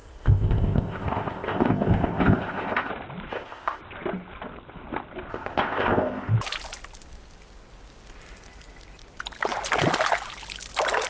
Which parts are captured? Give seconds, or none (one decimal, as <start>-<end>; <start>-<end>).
2.9-3.3; 3.8-5.3; 6.3-11.1